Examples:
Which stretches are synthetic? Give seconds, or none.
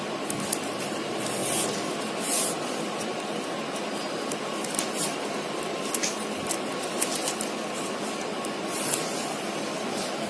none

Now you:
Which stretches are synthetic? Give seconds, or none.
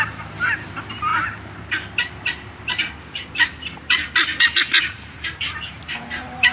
0.0-1.1 (vocoder, BigVGAN v2); 4.8-6.5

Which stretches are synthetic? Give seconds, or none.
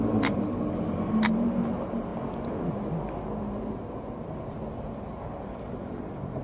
0.0-2.1 (vocoder, BigVGAN v2); 3.4-6.4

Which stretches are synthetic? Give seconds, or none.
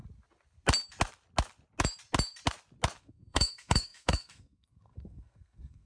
3.0-5.9 (codec, SNAC)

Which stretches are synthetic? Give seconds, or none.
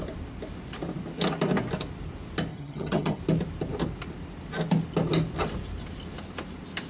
2.5-3.2 (vocoder, HiFi-GAN)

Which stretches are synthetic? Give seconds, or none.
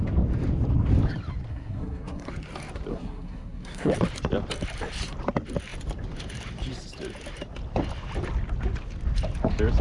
1.5-2.3 (codec, SNAC); 2.9-3.9